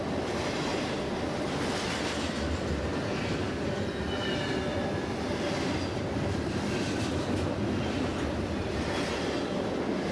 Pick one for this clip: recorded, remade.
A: recorded